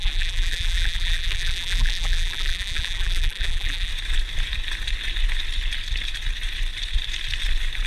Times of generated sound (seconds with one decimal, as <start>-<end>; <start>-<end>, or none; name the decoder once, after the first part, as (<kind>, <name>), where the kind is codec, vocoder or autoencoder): 0.0-3.9 (vocoder, BigVGAN v2)